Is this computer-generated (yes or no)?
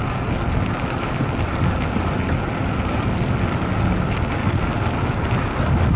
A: no